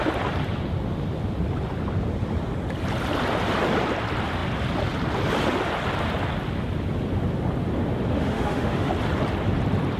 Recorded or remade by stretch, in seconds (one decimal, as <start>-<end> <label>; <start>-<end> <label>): 0.0-8.1 recorded; 8.1-8.9 remade; 8.9-10.0 recorded